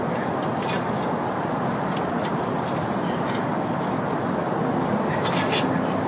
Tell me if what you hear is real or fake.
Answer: real